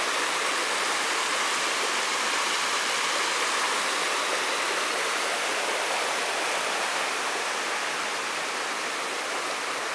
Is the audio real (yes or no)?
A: yes